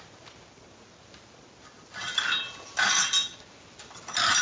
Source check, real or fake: real